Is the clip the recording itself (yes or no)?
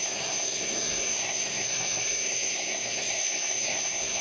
no